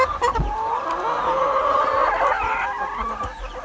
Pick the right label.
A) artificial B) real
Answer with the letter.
B